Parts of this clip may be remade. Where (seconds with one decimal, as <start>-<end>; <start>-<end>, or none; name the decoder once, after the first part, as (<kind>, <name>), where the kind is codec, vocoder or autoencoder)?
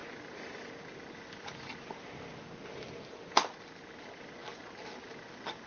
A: 0.0-4.4 (vocoder, BigVGAN v2); 4.9-5.7